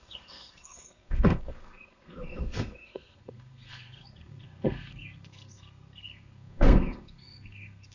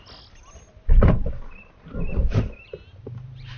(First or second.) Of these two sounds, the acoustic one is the second